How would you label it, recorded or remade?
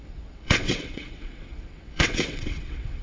remade